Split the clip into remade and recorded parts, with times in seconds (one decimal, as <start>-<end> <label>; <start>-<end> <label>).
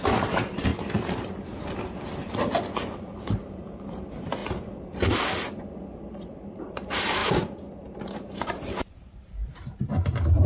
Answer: 0.0-0.7 remade; 0.7-3.2 recorded; 3.2-4.4 remade; 4.4-6.1 recorded; 6.1-10.5 remade